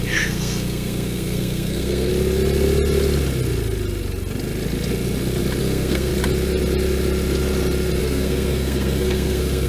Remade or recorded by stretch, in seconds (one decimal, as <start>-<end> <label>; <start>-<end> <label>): 0.0-2.1 remade; 2.1-5.6 recorded; 5.6-6.1 remade; 6.1-8.0 recorded; 8.0-9.7 remade